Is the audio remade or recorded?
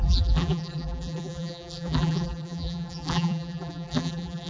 remade